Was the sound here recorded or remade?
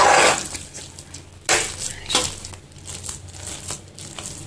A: recorded